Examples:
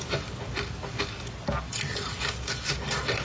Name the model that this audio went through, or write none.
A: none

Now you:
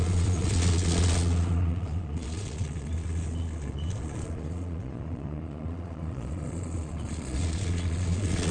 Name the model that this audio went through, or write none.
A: vocoder, Vocos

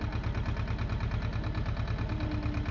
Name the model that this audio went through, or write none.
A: none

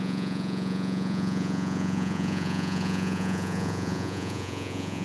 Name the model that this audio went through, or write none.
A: vocoder, Vocos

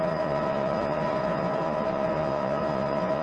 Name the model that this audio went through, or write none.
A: vocoder, Vocos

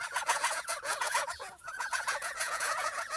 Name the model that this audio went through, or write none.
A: vocoder, Vocos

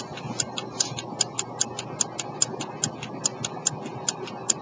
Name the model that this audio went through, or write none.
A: none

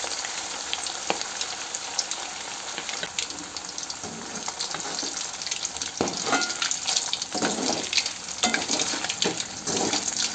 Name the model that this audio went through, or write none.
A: none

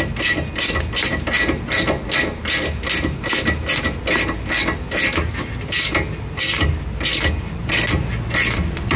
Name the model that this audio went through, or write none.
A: none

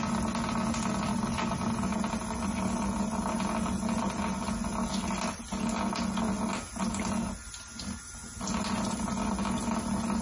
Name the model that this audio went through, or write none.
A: none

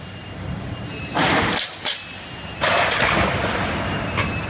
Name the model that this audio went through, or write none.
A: none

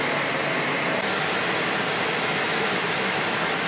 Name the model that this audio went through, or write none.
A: none